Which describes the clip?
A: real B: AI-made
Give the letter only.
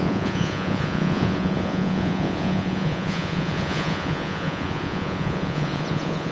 B